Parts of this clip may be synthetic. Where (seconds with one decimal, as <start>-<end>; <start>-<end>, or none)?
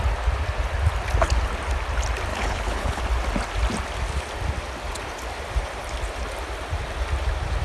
2.3-3.0